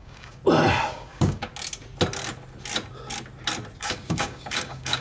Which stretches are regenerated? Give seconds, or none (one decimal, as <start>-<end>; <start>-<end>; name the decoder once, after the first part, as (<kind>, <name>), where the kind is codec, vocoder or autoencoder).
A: 0.0-0.4 (codec, DAC); 0.9-1.5; 3.8-5.0